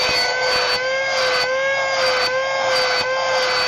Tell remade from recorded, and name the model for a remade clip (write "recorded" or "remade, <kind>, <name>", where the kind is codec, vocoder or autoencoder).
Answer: recorded